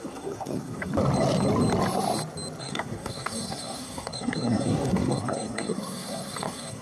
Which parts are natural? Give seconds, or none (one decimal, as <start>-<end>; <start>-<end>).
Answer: 0.9-2.6